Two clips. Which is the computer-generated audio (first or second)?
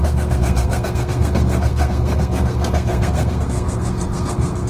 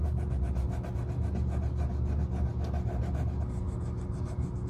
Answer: first